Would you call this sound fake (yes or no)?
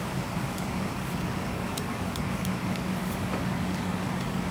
yes